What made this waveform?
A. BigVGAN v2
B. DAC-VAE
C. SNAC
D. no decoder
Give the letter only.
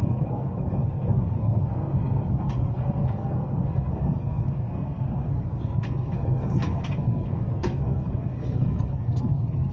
C